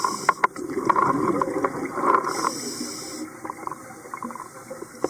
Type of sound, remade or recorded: recorded